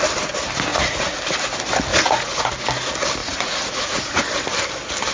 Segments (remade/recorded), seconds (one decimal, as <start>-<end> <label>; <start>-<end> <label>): 0.0-0.7 recorded; 0.7-1.2 remade; 1.2-1.9 recorded; 1.9-2.5 remade; 2.5-3.2 recorded; 3.2-4.2 remade; 4.2-5.1 recorded